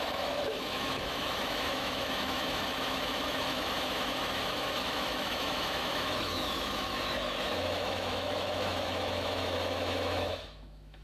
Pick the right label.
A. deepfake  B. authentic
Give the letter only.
A